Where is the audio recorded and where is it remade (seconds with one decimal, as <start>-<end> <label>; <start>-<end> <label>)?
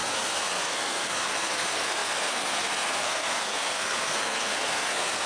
0.0-5.3 remade